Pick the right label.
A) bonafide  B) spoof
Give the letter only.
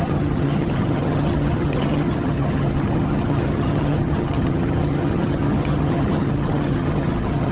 B